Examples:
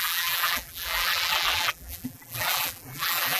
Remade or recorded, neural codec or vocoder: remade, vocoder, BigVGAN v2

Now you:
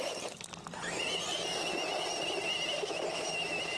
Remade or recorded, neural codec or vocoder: recorded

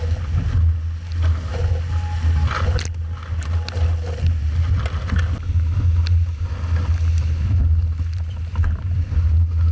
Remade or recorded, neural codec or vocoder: recorded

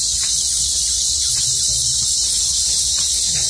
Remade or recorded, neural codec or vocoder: remade, vocoder, Vocos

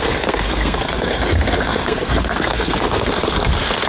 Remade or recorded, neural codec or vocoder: remade, codec, SNAC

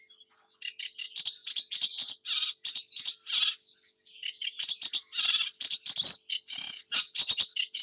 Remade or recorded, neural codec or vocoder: recorded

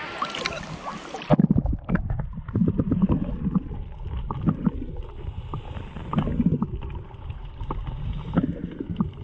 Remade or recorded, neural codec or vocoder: recorded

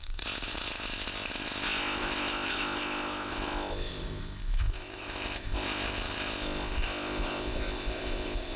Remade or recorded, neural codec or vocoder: remade, codec, ZipCodec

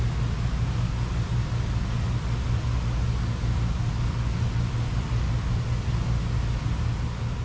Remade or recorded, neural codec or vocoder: recorded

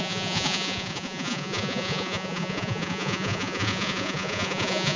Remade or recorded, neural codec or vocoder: remade, vocoder, Vocos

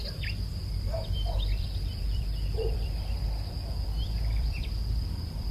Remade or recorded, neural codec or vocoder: remade, vocoder, BigVGAN v2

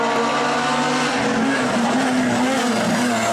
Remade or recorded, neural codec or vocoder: recorded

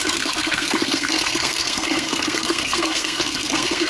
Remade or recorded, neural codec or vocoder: remade, codec, SNAC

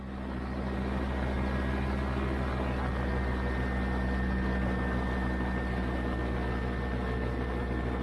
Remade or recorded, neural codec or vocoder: recorded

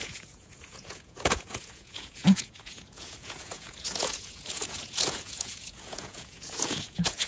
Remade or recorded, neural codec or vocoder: remade, vocoder, Vocos